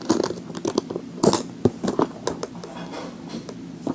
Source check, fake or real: real